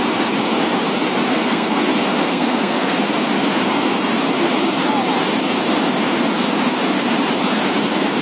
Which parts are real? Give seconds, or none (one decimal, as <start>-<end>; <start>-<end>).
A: 0.0-1.3; 1.8-2.2; 3.0-8.2